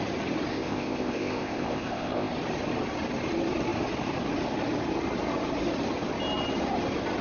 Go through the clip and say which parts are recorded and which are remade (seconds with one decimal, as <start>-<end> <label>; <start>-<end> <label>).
0.0-0.5 recorded; 0.5-2.3 remade; 2.3-7.2 recorded